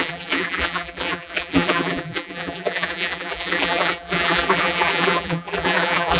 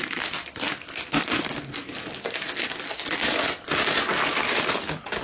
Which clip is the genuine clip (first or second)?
second